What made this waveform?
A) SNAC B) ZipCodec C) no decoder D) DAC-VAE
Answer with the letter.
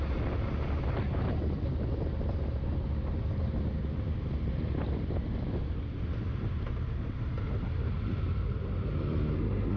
C